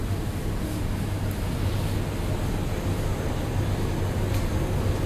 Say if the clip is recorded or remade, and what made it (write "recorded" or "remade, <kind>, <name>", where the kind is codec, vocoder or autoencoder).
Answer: recorded